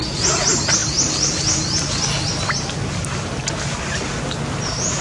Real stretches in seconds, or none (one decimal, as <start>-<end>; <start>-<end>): 0.8-3.8